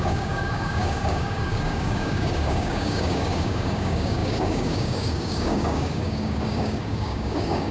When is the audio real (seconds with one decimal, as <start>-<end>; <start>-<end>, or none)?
none